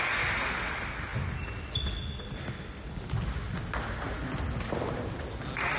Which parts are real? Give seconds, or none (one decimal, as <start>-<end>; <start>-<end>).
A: 0.0-5.8